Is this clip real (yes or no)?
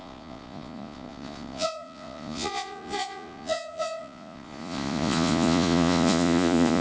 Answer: no